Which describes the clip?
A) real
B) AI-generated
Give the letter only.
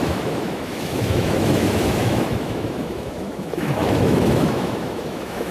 B